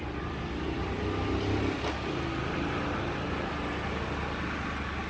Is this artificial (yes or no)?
no